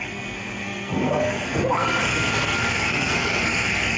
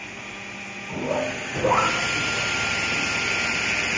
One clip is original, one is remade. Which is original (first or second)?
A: second